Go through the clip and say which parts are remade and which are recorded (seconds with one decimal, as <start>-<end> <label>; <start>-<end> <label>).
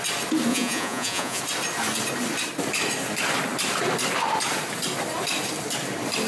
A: 0.0-0.5 recorded; 0.5-1.4 remade; 1.4-6.3 recorded